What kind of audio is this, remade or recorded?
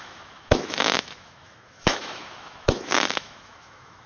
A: remade